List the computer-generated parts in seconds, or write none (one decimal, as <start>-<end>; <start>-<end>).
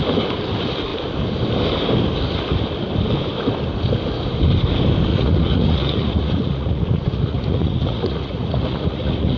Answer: 5.1-9.4